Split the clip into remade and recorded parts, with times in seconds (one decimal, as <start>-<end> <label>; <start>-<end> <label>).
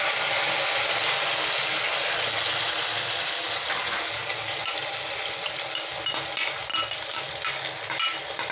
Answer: 0.0-8.5 recorded